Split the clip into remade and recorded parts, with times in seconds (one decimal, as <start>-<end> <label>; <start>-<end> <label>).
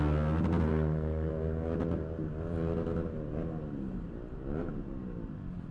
0.0-0.7 recorded; 0.7-1.3 remade; 1.3-5.7 recorded